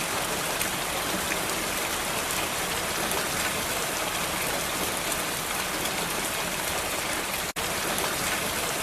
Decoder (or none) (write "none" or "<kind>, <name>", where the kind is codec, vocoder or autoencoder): none